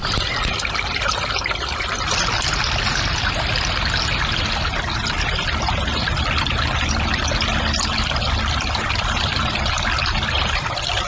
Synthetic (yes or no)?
no